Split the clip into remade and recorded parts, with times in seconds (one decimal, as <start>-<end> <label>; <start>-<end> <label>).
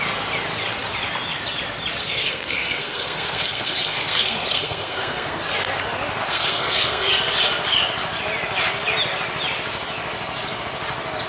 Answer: 0.0-2.0 recorded; 2.0-5.4 remade; 5.4-6.2 recorded; 6.2-7.1 remade; 7.1-11.3 recorded